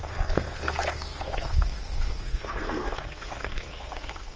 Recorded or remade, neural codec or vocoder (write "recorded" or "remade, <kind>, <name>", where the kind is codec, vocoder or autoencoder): remade, codec, SNAC